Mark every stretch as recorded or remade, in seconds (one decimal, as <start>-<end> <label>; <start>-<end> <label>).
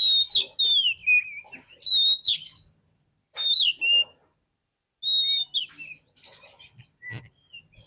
0.0-7.9 recorded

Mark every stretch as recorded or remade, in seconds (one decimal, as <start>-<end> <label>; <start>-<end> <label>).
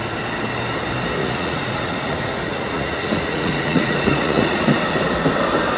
0.0-1.2 recorded; 1.2-4.7 remade; 4.7-5.8 recorded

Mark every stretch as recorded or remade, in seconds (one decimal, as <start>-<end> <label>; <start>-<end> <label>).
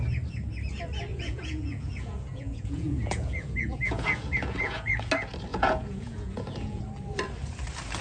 0.0-1.1 recorded; 1.1-5.1 remade; 5.1-5.5 recorded; 5.5-6.8 remade; 6.8-8.0 recorded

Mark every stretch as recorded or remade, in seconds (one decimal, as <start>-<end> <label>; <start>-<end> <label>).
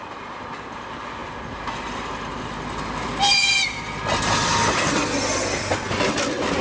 0.0-6.6 recorded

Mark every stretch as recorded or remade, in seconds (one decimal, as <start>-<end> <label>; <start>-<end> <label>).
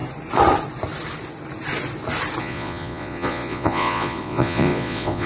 0.0-2.4 recorded; 2.4-5.3 remade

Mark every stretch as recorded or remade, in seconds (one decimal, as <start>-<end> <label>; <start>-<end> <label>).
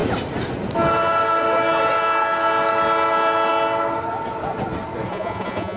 0.0-5.1 recorded; 5.1-5.8 remade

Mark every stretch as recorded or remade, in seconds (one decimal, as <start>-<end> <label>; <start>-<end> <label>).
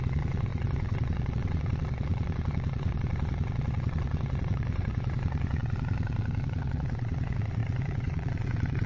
0.0-8.9 remade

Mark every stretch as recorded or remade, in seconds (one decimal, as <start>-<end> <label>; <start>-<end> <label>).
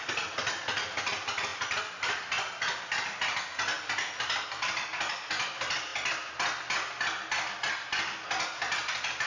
0.0-9.3 recorded